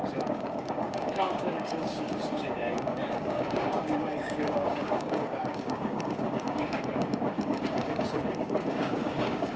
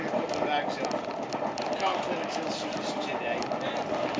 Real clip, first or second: second